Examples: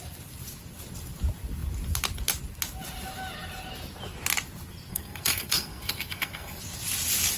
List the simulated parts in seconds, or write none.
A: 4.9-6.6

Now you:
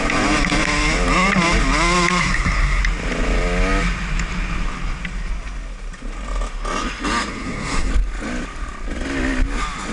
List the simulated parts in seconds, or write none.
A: 2.2-2.8; 7.3-7.9